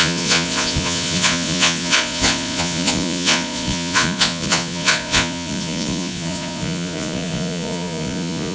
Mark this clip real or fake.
fake